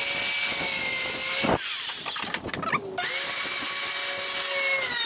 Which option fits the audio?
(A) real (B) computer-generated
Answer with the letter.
A